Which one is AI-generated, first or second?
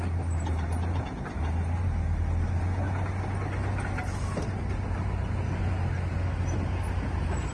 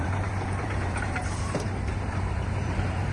second